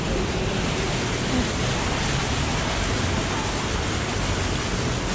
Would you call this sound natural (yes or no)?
yes